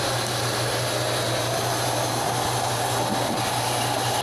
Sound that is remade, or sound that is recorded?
recorded